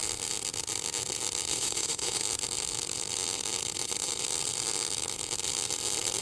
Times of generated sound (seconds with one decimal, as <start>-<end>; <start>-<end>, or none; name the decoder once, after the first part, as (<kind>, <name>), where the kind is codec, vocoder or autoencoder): 1.5-2.2 (autoencoder, DAC-VAE)